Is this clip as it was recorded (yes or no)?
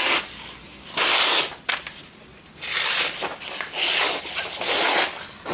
yes